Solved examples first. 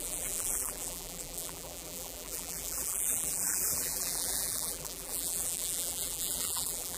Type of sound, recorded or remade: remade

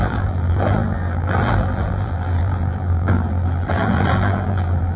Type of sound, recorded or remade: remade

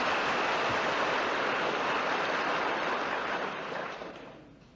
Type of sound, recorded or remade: remade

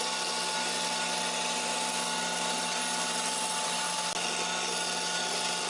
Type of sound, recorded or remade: recorded